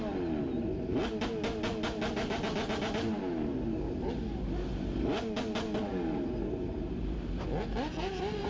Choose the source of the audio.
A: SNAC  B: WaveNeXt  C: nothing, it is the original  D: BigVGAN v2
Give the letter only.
C